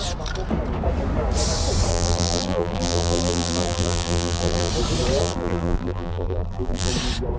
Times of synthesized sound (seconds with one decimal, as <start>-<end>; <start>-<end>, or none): 1.9-4.7; 5.2-6.9